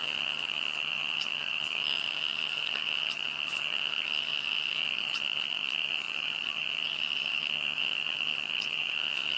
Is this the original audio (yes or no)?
no